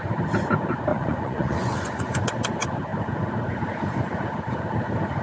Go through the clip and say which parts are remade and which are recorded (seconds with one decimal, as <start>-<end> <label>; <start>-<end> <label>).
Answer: 0.0-0.9 recorded; 0.9-2.2 remade; 2.2-5.2 recorded